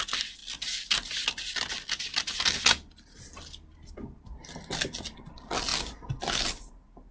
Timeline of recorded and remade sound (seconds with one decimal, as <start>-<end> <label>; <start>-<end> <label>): 0.0-7.1 recorded